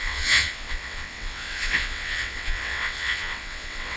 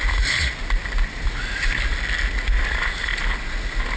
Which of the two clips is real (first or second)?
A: second